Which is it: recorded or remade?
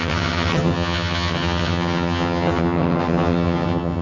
remade